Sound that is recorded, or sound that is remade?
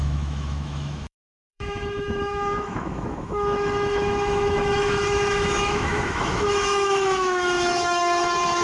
remade